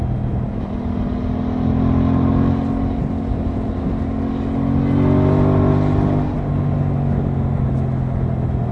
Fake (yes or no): no